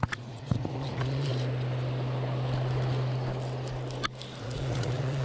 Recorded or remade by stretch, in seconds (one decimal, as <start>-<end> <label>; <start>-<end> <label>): 0.0-1.3 remade; 1.3-4.4 recorded; 4.4-5.2 remade